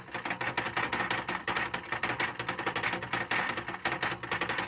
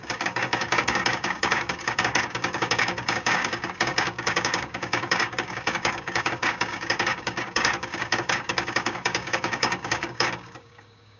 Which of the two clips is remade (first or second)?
second